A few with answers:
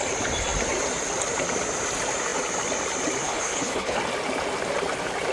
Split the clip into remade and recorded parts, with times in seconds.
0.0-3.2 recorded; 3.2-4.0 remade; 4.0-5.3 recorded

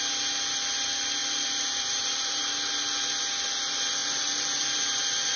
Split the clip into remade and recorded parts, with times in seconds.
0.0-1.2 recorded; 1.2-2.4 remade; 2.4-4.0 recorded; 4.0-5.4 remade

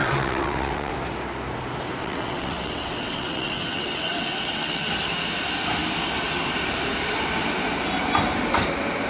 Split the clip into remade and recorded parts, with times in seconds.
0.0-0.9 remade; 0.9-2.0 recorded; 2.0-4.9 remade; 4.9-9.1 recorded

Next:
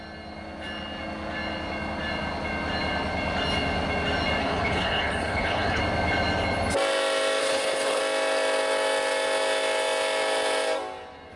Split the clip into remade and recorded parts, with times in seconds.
0.0-4.4 recorded; 4.4-5.8 remade; 5.8-7.4 recorded; 7.4-8.0 remade; 8.0-11.4 recorded